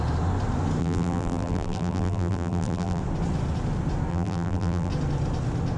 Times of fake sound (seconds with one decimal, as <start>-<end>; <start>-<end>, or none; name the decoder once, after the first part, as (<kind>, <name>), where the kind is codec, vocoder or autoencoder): 0.8-3.0 (vocoder, BigVGAN v2); 4.1-4.9